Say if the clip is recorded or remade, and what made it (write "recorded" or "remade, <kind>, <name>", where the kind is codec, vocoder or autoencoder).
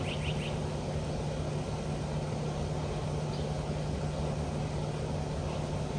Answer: recorded